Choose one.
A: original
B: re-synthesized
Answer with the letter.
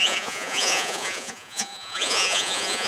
B